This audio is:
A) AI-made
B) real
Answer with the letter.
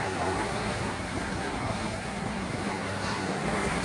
A